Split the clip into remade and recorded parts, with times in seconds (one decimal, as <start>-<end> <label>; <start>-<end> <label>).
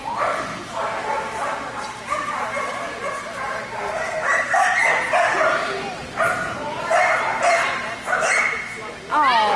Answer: 0.0-9.6 recorded